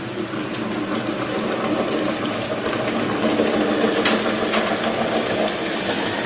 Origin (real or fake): real